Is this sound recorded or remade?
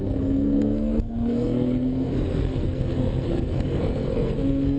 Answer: remade